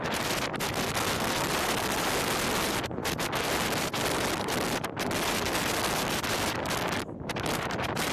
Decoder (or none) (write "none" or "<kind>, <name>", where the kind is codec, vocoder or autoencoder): none